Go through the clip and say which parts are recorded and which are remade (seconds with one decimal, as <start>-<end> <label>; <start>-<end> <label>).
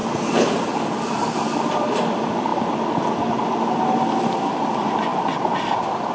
0.0-0.7 recorded; 0.7-2.5 remade; 2.5-3.9 recorded; 3.9-5.1 remade; 5.1-6.1 recorded